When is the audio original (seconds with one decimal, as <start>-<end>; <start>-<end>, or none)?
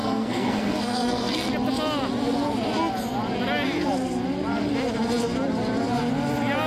1.5-6.7